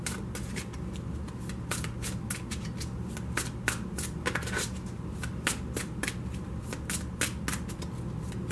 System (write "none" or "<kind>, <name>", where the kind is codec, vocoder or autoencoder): none